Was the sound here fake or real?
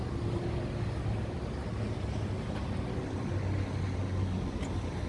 real